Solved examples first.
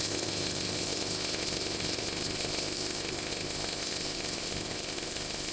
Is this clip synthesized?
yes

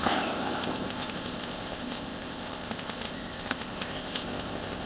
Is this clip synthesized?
yes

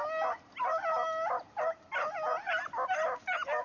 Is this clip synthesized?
no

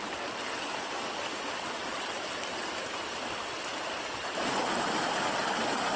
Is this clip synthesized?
no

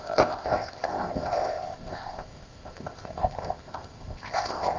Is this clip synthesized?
yes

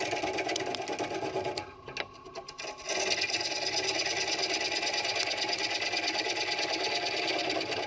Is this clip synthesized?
no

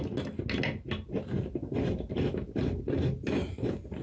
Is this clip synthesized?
no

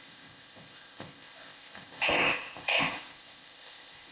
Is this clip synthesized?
yes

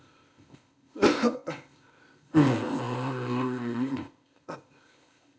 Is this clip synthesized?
yes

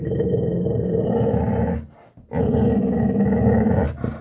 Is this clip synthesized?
no